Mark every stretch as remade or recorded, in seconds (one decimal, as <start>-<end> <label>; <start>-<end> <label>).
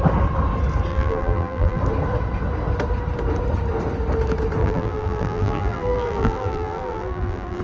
0.0-0.9 recorded; 0.9-1.8 remade; 1.8-4.6 recorded; 4.6-7.6 remade